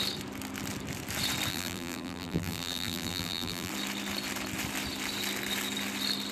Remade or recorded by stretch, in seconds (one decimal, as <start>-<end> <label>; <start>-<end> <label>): 0.0-1.5 recorded; 1.5-3.7 remade; 3.7-6.3 recorded